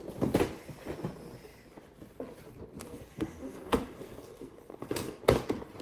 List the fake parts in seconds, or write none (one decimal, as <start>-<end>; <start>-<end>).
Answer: 2.8-5.2